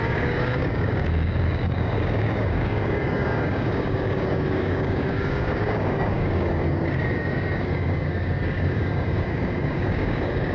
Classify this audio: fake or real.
fake